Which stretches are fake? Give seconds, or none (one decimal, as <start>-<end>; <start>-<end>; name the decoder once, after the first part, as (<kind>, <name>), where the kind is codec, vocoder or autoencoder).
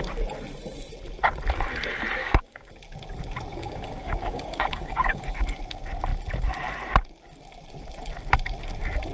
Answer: 2.2-2.7 (codec, DAC); 3.5-5.2